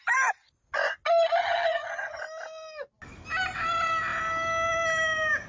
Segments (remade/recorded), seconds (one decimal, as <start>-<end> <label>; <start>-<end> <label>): 0.0-1.4 recorded; 1.4-2.2 remade; 2.2-5.5 recorded